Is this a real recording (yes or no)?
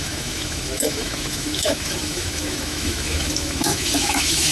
no